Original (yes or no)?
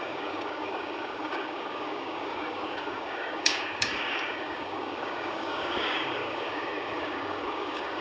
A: no